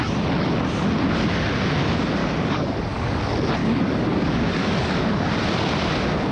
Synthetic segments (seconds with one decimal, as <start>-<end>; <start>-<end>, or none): 2.2-3.2; 3.6-5.3